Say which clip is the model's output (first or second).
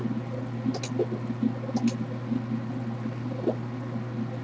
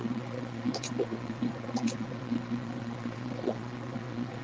second